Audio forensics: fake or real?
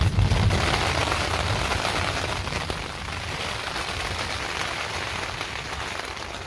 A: fake